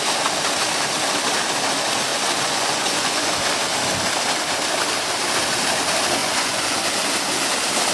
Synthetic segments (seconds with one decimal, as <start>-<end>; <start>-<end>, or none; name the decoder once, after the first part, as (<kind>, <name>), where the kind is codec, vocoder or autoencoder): 2.1-3.3 (vocoder, Vocos); 6.2-6.9